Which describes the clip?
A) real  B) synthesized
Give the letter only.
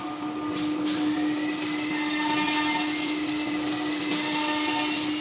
A